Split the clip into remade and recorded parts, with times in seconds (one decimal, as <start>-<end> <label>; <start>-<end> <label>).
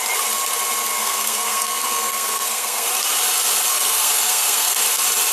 0.0-1.0 recorded; 1.0-2.9 remade; 2.9-3.7 recorded; 3.7-4.8 remade; 4.8-5.3 recorded